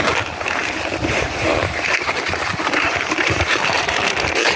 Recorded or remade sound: remade